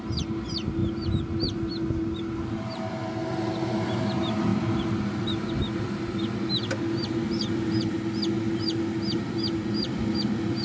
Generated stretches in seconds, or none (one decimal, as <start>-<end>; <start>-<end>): none